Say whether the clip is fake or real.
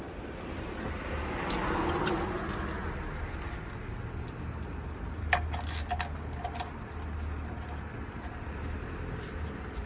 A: real